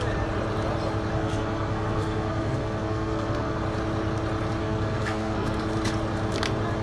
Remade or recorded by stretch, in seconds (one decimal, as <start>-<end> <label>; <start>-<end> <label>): 0.0-1.1 recorded; 1.1-3.6 remade; 3.6-4.6 recorded; 4.6-5.6 remade; 5.6-6.8 recorded